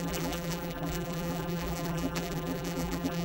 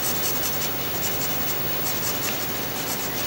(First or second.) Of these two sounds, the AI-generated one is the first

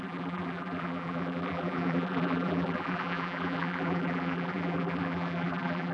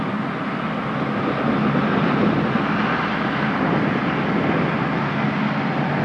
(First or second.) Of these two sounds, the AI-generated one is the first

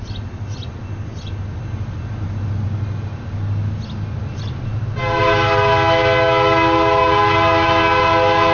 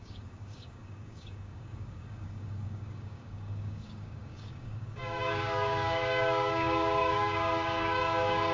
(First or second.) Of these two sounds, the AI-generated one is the second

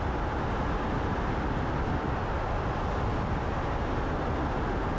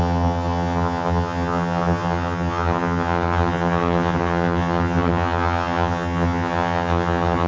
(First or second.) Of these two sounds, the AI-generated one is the second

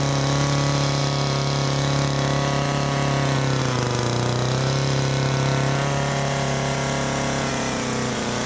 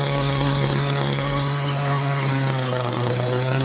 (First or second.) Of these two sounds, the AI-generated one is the second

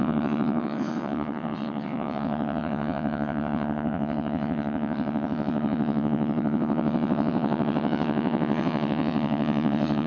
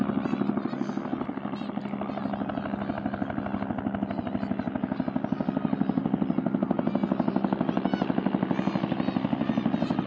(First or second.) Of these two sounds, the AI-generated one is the first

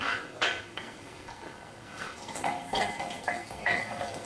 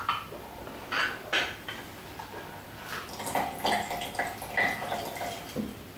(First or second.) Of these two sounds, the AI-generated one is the first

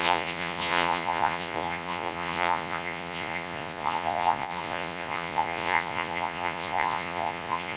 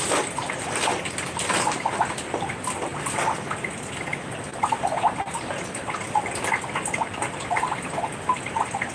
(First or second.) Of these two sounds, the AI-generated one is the first